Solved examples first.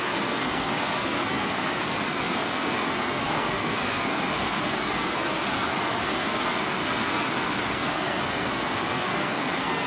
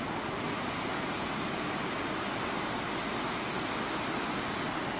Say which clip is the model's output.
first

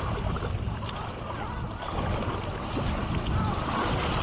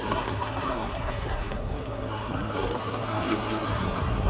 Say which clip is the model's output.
second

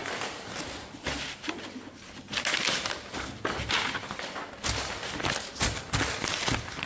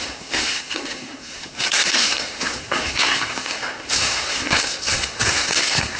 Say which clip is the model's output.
second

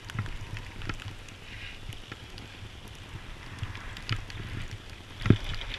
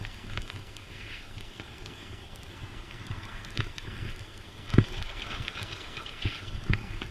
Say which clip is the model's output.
second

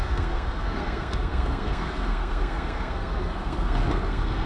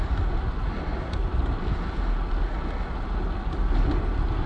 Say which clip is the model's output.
first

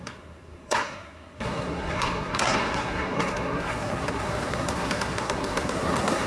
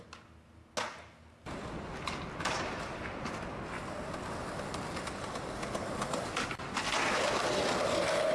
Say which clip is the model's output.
first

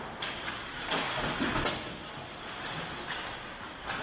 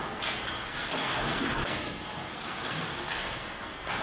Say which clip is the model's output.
second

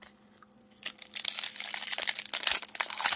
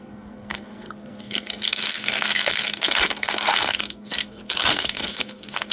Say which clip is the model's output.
second